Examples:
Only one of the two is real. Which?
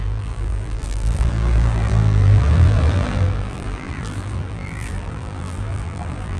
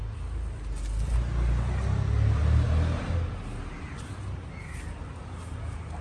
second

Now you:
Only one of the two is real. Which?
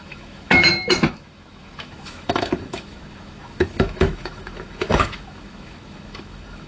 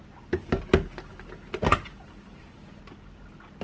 second